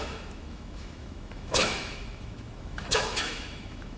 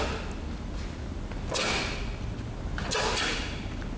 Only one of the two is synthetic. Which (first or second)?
first